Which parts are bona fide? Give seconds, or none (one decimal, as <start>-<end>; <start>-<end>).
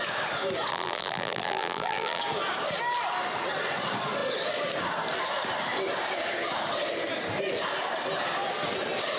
0.0-0.7; 2.2-9.2